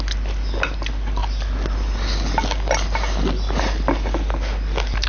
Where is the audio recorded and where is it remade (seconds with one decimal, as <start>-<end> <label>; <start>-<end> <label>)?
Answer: 0.0-5.1 recorded